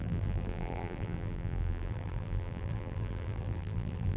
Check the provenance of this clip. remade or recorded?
remade